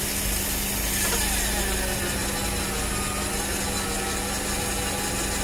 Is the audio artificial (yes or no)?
no